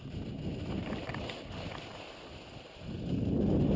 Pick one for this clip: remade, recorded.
recorded